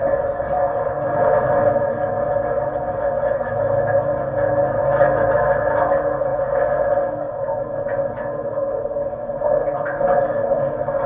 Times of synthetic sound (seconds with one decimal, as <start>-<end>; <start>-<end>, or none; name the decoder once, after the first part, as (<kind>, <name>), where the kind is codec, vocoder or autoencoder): none